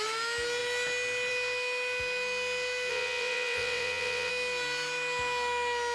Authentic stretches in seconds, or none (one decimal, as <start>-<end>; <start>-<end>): 0.0-2.9; 4.3-5.9